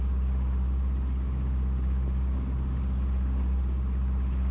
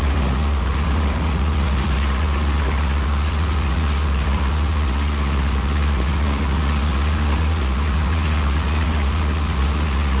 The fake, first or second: second